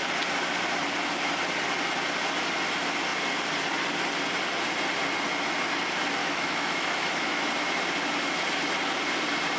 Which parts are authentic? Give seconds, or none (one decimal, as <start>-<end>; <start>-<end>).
0.0-6.2; 7.4-9.6